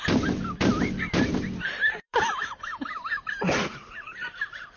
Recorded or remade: remade